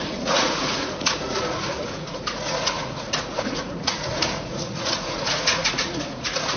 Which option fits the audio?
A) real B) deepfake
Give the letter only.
B